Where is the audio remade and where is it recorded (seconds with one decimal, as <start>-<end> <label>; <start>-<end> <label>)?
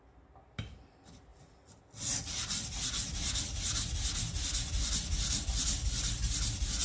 0.0-6.8 recorded